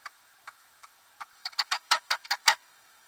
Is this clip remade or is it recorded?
remade